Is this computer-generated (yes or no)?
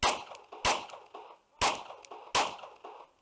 no